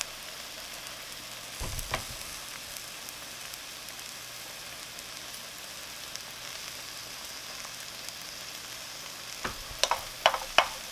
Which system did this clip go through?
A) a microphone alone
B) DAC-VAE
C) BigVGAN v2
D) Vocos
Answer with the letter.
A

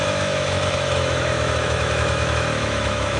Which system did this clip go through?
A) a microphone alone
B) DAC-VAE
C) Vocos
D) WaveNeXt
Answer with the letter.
B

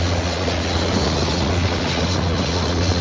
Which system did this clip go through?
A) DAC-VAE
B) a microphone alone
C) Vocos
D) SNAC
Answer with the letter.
C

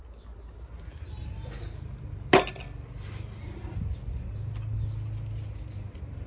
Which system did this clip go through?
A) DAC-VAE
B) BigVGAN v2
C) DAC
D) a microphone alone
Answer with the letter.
D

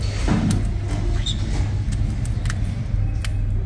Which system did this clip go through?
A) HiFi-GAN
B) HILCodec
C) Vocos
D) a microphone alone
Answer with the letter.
D